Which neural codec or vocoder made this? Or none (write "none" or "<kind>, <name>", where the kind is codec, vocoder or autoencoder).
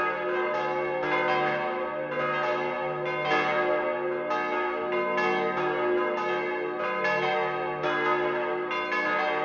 none